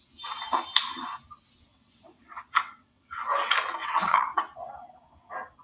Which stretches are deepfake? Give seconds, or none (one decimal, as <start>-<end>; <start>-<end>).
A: 1.7-3.1; 3.8-4.7